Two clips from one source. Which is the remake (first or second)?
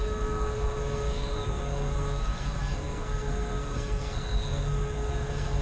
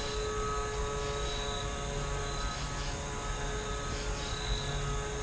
first